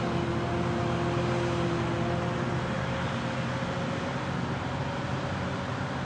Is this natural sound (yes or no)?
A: yes